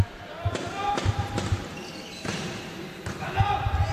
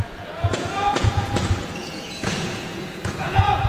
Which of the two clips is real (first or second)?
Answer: first